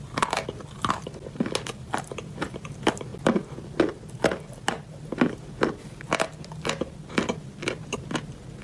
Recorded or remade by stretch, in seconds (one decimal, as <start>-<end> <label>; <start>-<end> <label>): 0.0-8.6 recorded